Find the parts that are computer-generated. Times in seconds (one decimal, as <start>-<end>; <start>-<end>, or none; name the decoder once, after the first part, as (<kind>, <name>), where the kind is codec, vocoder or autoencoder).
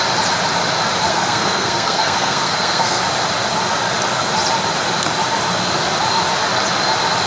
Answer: 1.1-3.0 (codec, SNAC)